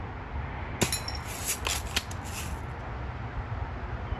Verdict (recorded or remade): recorded